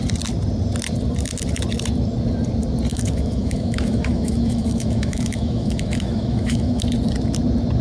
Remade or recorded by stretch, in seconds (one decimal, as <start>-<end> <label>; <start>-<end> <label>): 0.0-2.9 recorded; 2.9-6.8 remade; 6.8-7.8 recorded